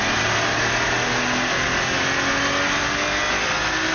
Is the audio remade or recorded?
recorded